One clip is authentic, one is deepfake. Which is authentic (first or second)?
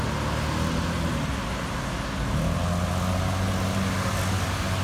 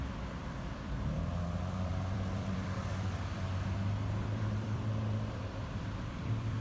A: first